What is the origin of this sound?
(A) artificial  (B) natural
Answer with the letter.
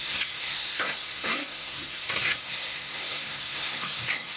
A